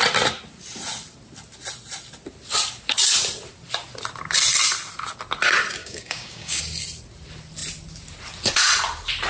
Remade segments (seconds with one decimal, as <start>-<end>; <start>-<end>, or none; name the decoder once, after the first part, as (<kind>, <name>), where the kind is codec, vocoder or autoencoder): 5.8-6.6 (codec, DAC)